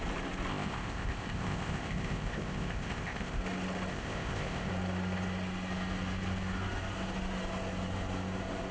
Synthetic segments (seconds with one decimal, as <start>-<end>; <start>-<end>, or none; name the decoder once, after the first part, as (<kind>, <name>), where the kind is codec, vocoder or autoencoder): 0.5-3.4 (codec, ZipCodec); 3.9-4.7